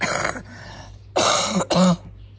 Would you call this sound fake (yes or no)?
no